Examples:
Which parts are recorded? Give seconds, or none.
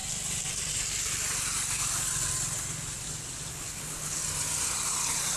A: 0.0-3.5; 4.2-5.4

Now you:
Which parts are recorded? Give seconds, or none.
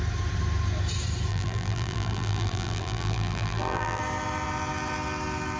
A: 0.0-1.3; 4.0-5.6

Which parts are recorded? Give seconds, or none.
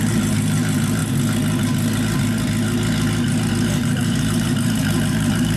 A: 1.0-3.5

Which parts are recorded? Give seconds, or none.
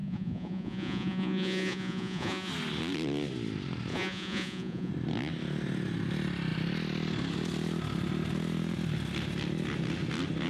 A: 2.5-3.9; 4.9-10.5